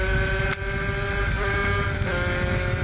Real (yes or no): yes